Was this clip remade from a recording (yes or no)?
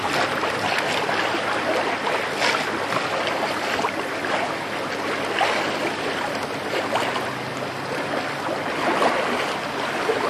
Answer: no